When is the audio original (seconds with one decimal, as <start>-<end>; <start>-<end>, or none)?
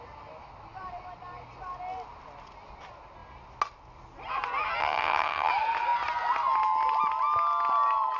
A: 0.0-4.8; 5.5-8.2